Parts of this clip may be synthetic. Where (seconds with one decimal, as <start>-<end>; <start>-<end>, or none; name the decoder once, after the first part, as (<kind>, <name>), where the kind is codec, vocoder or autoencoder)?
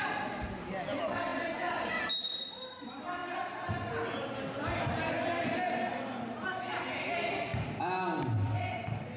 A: 1.3-1.9 (vocoder, BigVGAN v2)